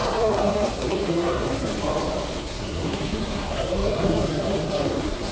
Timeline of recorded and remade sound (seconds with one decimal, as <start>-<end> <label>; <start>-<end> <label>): 0.0-1.7 remade; 1.7-2.4 recorded; 2.4-5.3 remade